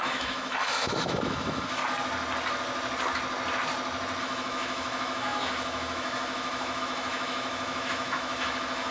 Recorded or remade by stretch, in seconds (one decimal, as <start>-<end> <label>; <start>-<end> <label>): 0.0-1.8 remade; 1.8-4.2 recorded; 4.2-8.9 remade